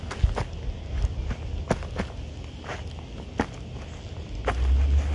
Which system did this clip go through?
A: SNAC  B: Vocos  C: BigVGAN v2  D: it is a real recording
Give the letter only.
D